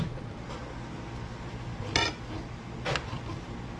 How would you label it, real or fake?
real